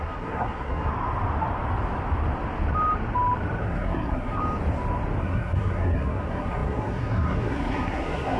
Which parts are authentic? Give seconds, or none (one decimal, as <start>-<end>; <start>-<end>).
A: 0.9-3.6; 4.4-5.2